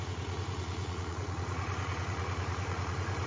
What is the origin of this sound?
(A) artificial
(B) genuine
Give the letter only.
A